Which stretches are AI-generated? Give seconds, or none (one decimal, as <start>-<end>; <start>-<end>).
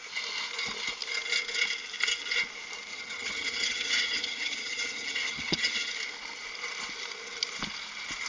2.9-5.9